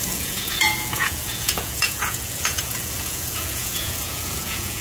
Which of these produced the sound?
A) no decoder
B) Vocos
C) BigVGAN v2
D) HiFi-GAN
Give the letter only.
B